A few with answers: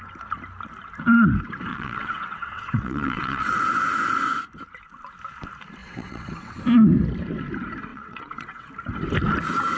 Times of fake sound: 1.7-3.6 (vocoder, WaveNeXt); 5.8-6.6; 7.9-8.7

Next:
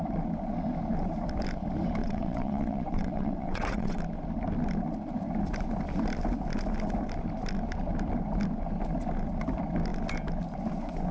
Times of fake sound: 2.0-4.0 (vocoder, WaveNeXt)

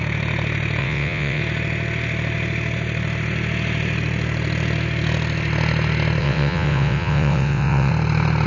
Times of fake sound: 0.8-1.4 (vocoder, WaveNeXt); 6.2-7.9